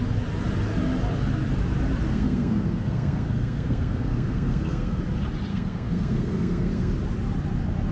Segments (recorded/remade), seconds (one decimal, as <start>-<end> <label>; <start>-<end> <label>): 0.0-2.1 recorded; 2.1-5.0 remade; 5.0-5.5 recorded; 5.5-6.9 remade; 6.9-7.9 recorded